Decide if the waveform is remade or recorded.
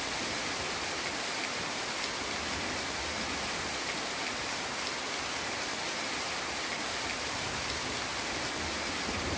recorded